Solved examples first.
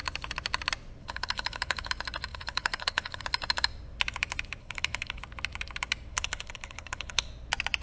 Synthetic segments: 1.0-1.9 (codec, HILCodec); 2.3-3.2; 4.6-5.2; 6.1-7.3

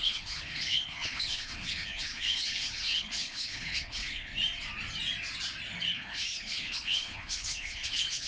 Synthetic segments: 0.0-4.3 (codec, HILCodec); 5.9-8.3

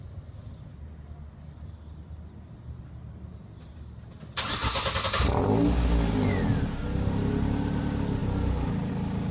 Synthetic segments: none

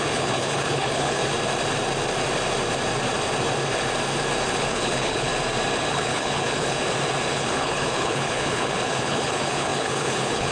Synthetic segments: 0.0-1.2 (codec, HILCodec); 4.5-5.3; 5.9-6.8; 7.3-10.5

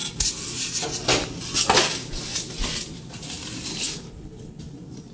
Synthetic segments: 3.7-4.6 (codec, HILCodec)

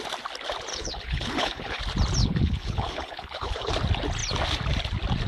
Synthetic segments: 0.7-1.8 (codec, HILCodec); 2.2-3.7